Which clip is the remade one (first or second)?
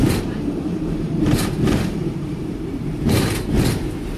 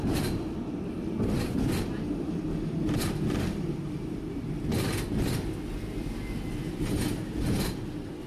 first